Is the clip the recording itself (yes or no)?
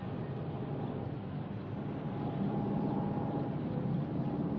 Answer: no